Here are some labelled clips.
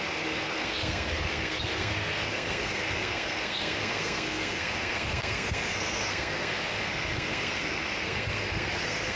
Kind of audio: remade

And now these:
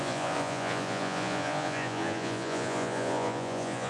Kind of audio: remade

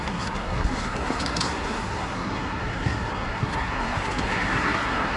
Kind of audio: remade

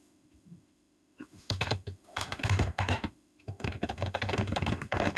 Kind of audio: remade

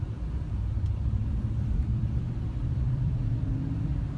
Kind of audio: remade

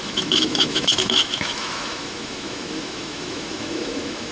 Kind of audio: remade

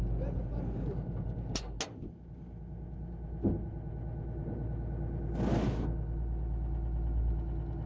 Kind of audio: recorded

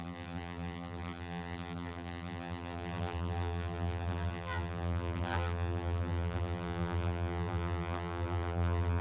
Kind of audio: remade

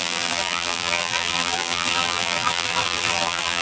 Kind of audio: remade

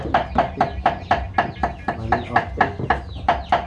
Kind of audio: recorded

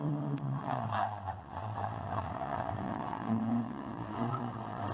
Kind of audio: remade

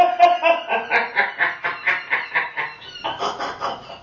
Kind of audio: recorded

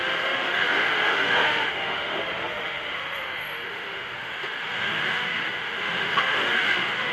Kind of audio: remade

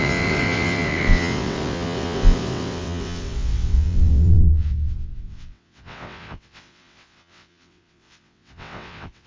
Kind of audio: remade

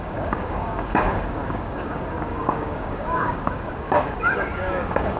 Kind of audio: remade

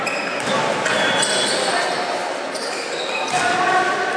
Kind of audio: remade